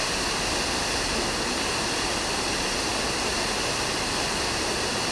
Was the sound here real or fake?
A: real